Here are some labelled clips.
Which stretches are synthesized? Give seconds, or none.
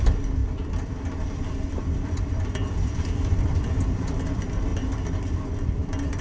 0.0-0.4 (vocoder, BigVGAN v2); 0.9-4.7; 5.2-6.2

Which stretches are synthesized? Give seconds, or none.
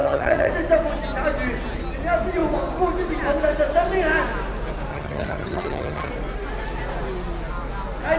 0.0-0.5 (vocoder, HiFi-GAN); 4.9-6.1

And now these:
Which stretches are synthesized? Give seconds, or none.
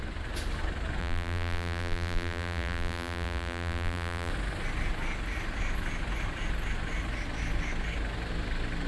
1.0-4.3 (vocoder, BigVGAN v2)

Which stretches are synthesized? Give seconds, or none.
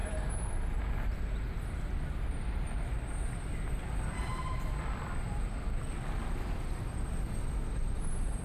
none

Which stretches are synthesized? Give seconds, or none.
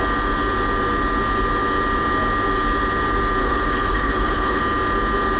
3.4-4.6 (codec, HILCodec)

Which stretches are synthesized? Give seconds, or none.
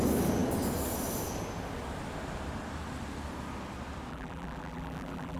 4.1-5.4 (vocoder, BigVGAN v2)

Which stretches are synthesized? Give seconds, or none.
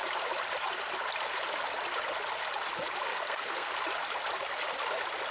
3.1-3.7 (codec, SNAC)